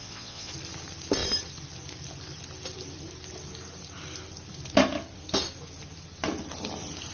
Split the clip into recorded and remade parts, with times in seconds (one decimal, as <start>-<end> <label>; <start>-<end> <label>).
0.0-0.5 remade; 0.5-7.1 recorded